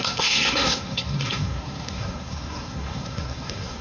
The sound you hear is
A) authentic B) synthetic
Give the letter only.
B